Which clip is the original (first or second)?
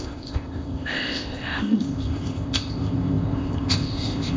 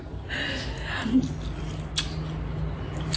second